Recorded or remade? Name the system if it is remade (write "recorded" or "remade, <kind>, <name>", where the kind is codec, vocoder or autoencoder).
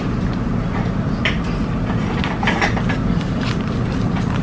recorded